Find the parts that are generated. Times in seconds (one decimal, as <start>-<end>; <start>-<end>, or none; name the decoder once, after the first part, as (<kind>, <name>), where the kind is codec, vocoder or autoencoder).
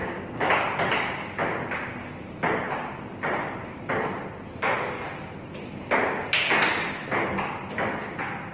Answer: 0.0-0.5 (codec, DAC)